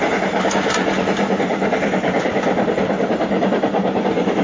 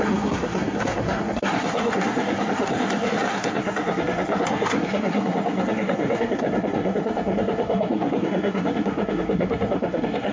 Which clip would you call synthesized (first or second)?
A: second